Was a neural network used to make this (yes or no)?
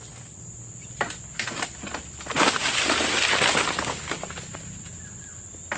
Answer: no